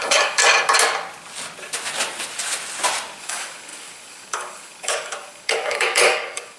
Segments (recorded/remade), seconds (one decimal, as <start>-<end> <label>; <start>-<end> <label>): 0.0-0.4 remade; 0.4-3.2 recorded; 3.2-6.6 remade